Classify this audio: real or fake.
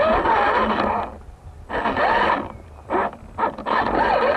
real